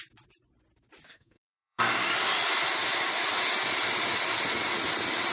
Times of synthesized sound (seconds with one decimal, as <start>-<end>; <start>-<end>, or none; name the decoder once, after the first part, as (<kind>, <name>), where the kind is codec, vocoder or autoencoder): 1.1-1.8 (codec, SNAC)